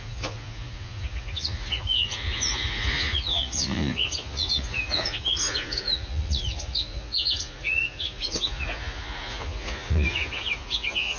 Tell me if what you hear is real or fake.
fake